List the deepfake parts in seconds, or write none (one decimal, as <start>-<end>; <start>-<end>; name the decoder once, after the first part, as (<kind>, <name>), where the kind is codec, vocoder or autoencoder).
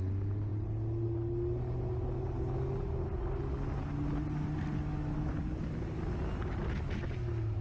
none